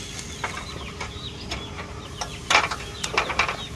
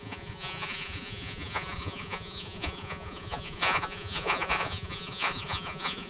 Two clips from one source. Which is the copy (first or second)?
second